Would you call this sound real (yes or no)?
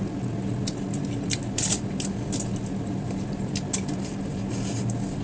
yes